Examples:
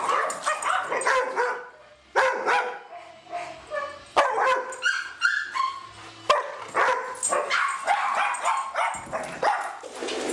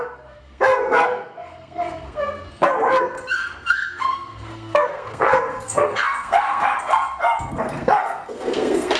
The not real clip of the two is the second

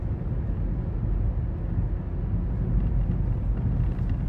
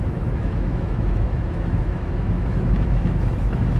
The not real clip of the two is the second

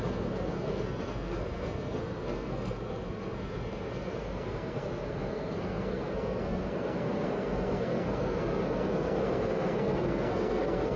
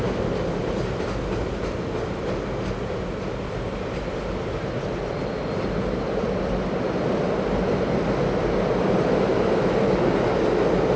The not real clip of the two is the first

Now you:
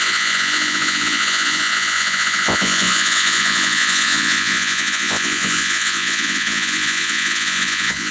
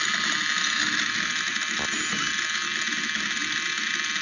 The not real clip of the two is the first